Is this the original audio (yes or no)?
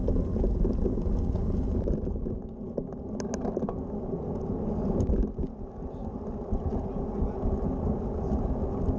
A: yes